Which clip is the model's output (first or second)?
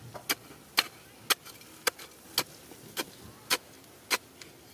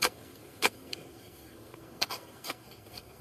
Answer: second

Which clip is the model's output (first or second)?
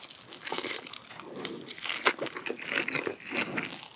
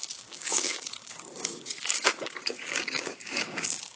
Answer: second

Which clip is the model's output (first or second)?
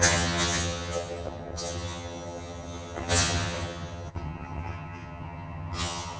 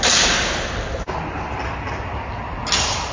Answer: first